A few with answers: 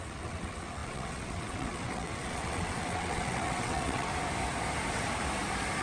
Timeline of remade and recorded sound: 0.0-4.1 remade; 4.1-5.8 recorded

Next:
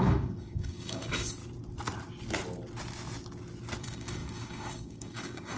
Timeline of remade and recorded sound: 0.0-1.4 remade; 1.4-3.8 recorded; 3.8-5.6 remade